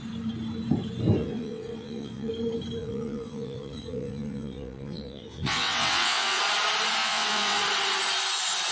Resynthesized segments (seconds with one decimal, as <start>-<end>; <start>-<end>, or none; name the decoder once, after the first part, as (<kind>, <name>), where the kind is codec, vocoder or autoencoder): 1.2-2.3 (vocoder, WaveNeXt); 2.8-6.4; 7.0-7.6